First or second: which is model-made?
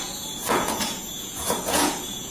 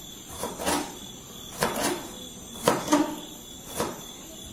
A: first